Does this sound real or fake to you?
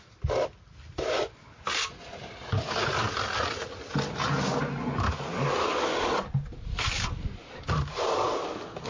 real